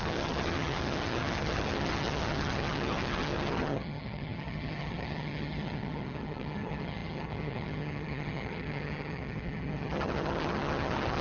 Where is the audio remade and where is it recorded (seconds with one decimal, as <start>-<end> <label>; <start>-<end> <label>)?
0.0-11.2 remade